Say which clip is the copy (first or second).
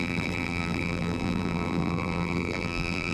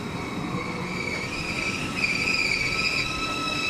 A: first